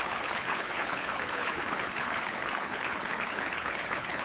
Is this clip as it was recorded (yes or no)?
no